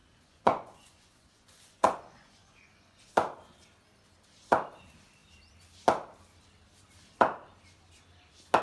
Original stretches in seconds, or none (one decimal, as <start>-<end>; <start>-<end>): 3.1-8.6